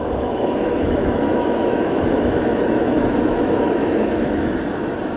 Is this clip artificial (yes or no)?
yes